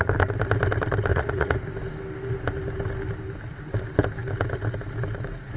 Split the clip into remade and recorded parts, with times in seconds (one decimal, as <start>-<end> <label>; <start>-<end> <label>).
0.0-1.1 recorded; 1.1-1.7 remade; 1.7-5.6 recorded